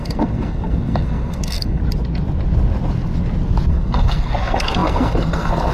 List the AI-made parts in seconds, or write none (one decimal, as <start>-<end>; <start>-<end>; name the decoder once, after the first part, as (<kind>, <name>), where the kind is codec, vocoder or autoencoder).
0.0-1.8 (codec, SNAC); 3.7-5.7

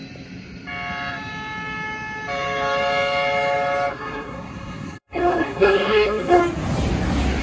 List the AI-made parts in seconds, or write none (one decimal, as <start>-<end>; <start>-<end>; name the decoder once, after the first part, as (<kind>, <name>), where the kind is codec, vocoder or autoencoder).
3.9-6.4 (codec, SNAC)

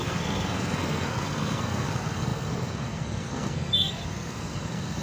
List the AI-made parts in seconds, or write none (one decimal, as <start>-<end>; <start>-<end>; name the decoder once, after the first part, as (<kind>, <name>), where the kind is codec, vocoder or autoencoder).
0.0-5.0 (codec, SNAC)